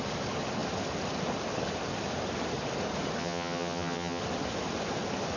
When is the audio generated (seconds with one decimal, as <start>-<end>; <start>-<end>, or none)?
3.2-4.2